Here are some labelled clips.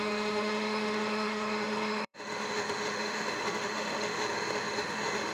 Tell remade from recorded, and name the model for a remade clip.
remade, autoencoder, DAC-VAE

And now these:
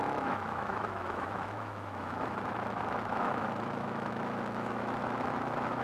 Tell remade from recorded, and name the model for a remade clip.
remade, autoencoder, DAC-VAE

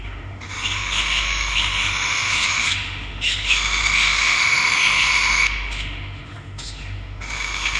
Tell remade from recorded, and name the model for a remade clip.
remade, autoencoder, DAC-VAE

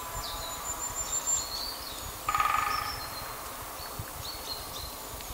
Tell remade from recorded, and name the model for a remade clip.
recorded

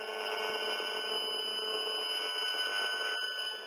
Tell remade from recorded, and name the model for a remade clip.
recorded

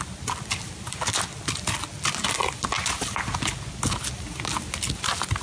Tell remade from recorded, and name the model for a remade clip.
recorded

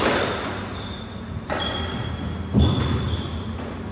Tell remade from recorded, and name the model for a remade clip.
recorded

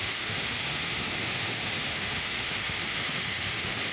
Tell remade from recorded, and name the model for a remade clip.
remade, autoencoder, DAC-VAE